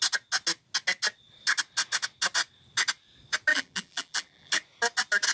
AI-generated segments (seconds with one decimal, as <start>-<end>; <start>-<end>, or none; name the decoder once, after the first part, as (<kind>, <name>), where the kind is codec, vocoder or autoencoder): 3.5-4.5 (vocoder, BigVGAN v2)